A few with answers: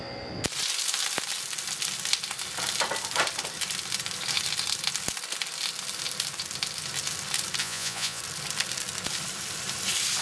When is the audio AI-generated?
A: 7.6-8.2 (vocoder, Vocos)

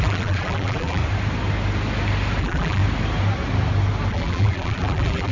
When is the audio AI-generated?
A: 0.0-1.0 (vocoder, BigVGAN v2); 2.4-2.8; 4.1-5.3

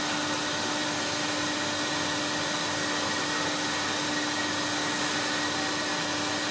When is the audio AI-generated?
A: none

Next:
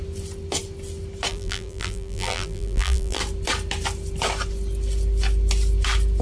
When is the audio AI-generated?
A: 1.3-3.2 (vocoder, BigVGAN v2)

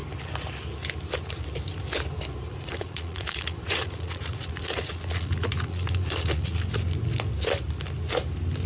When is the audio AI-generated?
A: 2.5-6.5 (vocoder, Vocos)

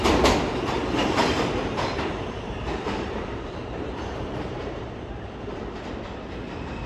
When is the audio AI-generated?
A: 1.2-5.3 (vocoder, BigVGAN v2)